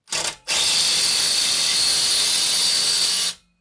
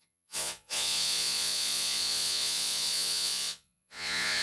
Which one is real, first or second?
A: first